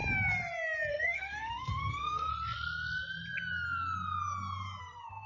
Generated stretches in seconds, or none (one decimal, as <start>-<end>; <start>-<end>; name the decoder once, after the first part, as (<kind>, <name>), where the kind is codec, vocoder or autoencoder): 0.9-2.3 (codec, SNAC); 4.8-5.3